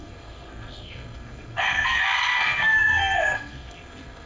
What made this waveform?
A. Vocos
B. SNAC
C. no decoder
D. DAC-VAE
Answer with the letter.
B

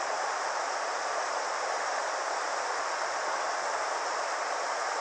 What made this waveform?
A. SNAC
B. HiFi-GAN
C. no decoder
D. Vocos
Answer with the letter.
C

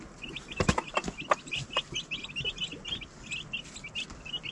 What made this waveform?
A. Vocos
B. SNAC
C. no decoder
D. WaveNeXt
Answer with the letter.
C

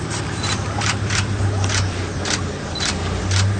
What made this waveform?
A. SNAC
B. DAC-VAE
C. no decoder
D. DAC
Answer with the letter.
C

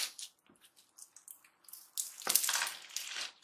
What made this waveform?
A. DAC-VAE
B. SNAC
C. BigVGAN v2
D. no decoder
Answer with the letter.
D